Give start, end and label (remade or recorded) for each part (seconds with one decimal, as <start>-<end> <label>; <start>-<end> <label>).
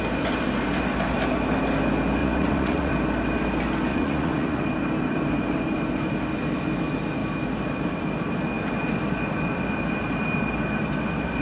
0.0-2.2 recorded; 2.2-2.9 remade; 2.9-3.9 recorded; 3.9-4.6 remade; 4.6-11.4 recorded